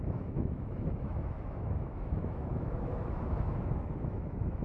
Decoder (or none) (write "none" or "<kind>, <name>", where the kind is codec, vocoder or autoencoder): autoencoder, DAC-VAE